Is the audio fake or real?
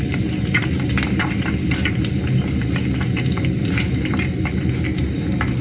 real